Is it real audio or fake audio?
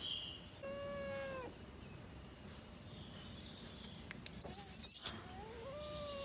real